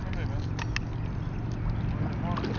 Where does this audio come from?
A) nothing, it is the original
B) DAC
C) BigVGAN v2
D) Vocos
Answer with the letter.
A